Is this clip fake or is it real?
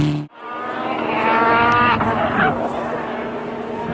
real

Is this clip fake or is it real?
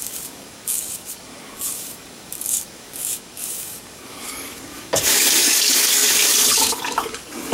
fake